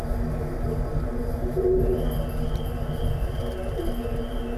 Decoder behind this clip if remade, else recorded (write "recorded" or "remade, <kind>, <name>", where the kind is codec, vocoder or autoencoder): recorded